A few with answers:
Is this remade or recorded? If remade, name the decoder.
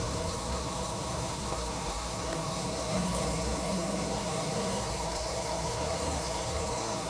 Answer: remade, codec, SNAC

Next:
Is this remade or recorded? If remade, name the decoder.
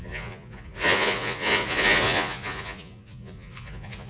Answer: remade, vocoder, Vocos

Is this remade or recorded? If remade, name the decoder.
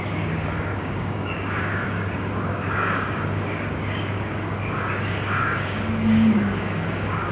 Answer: remade, codec, DAC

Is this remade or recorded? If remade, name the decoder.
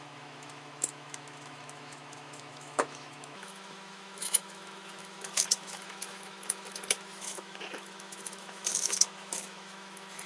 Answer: remade, autoencoder, DAC-VAE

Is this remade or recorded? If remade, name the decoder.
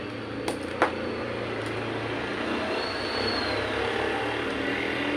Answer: recorded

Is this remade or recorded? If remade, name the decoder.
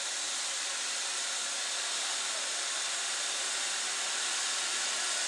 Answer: recorded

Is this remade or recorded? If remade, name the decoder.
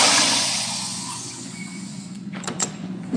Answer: remade, vocoder, Vocos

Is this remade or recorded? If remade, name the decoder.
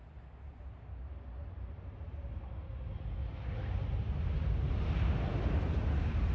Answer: recorded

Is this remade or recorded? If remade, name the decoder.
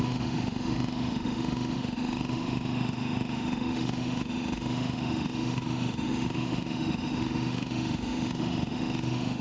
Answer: remade, autoencoder, DAC-VAE